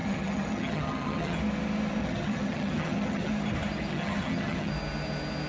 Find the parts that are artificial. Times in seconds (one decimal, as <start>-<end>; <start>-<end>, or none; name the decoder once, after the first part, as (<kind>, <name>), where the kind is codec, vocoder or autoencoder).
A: 0.0-1.4 (vocoder, HiFi-GAN); 2.0-3.3; 3.9-4.7

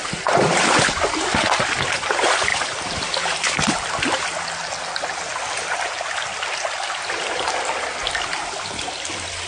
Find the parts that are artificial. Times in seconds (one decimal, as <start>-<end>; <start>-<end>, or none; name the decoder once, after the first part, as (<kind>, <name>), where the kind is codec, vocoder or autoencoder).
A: 0.0-0.6 (vocoder, BigVGAN v2); 2.5-3.9

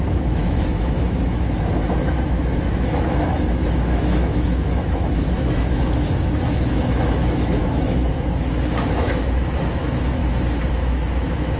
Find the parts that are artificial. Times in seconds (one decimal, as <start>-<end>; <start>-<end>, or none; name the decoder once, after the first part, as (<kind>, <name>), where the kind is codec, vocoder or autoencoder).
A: 0.0-10.2 (autoencoder, DAC-VAE); 10.7-11.6

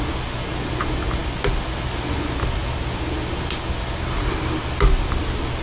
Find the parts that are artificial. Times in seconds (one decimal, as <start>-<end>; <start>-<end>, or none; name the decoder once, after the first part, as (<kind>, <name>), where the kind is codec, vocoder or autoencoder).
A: none

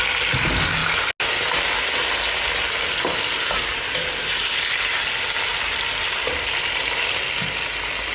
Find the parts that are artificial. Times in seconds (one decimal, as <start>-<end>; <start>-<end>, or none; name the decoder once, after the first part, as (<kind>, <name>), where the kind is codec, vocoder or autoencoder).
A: none

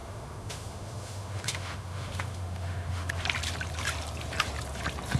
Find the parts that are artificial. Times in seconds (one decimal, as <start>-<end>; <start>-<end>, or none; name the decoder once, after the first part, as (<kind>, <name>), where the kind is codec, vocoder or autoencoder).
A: 0.0-3.1 (autoencoder, DAC-VAE)